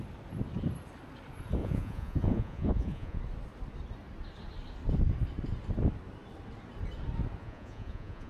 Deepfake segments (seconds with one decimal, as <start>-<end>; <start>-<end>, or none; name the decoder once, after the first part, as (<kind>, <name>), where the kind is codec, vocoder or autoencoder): 1.6-3.2 (vocoder, Vocos); 7.4-8.3